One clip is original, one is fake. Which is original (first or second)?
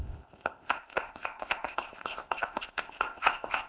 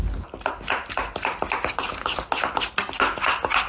second